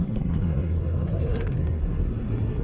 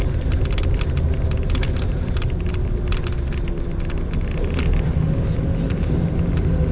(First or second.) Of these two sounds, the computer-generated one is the first